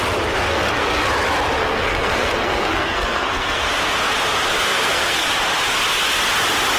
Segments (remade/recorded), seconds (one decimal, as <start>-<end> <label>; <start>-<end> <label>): 0.0-0.5 recorded; 0.5-1.1 remade; 1.1-1.6 recorded; 1.6-3.7 remade; 3.7-4.7 recorded; 4.7-5.3 remade; 5.3-6.8 recorded